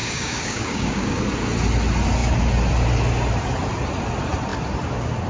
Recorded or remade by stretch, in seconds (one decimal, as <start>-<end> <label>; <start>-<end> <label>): 0.0-1.2 remade; 1.2-5.3 recorded